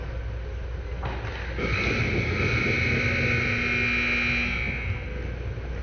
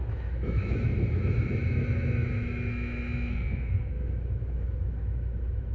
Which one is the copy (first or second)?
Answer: second